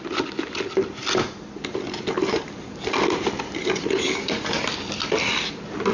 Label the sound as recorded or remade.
recorded